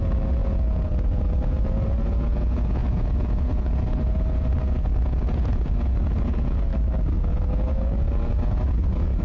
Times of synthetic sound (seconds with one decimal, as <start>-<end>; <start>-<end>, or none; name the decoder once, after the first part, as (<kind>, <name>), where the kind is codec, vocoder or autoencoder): 0.0-6.7 (vocoder, Vocos); 7.2-9.2